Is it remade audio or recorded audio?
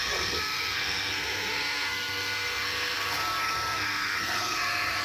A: remade